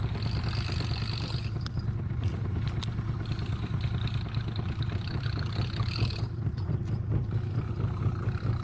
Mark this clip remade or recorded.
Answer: recorded